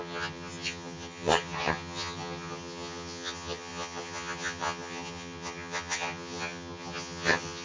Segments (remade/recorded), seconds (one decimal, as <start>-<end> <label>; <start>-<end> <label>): 0.0-7.6 remade